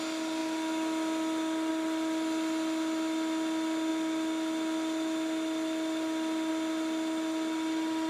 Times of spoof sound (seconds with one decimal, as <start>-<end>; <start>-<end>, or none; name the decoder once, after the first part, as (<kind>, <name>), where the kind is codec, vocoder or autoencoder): none

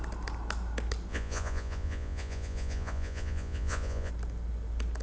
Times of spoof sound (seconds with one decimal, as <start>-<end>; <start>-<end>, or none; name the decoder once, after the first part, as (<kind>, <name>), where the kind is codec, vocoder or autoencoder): 1.1-4.1 (vocoder, Vocos)

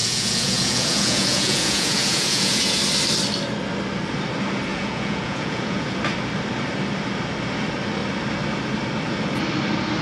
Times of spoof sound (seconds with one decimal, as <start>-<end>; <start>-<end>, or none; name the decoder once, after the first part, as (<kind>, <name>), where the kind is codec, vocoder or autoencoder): 0.0-2.8 (vocoder, Vocos); 4.7-6.0

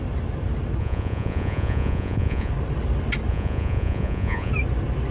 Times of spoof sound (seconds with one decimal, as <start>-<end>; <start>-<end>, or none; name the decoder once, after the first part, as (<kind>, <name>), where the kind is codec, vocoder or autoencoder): 0.8-2.5 (vocoder, Vocos); 3.3-4.5

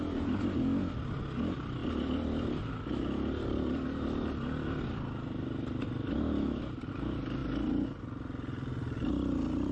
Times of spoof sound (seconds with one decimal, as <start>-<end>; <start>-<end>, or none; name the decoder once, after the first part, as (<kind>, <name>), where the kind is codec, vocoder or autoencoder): none

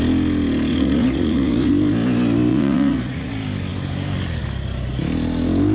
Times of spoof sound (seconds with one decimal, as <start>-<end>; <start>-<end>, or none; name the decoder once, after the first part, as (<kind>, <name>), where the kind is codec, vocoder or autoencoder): 0.7-1.7 (vocoder, Vocos); 2.5-3.3

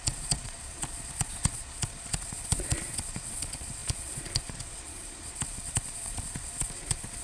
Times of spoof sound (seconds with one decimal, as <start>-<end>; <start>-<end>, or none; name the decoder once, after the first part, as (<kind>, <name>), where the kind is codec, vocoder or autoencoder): 0.0-7.2 (vocoder, Vocos)